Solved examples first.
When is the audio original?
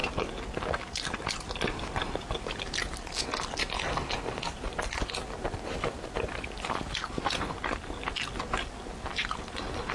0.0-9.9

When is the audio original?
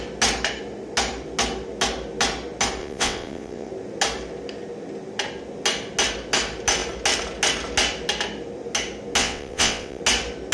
0.0-2.8; 3.7-9.2; 10.0-10.5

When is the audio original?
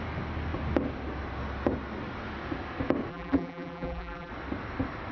0.0-3.1; 4.3-5.1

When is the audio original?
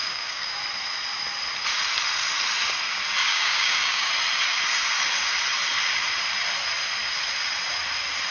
0.6-3.2; 4.1-8.3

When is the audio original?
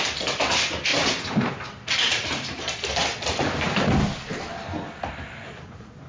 0.0-2.1; 2.7-6.1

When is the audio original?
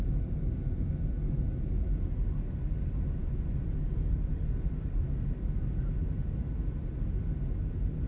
0.0-3.2; 4.3-8.1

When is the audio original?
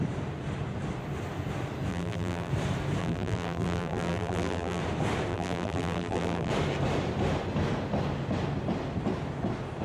0.0-1.9; 2.5-3.0; 4.8-5.3; 6.5-9.8